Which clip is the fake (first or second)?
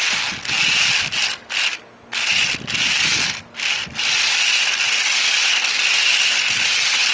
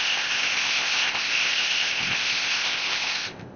second